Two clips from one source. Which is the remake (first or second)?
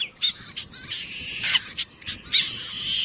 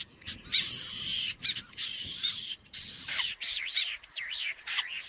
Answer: second